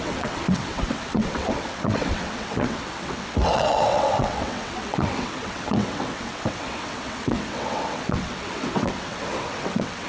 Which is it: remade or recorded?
remade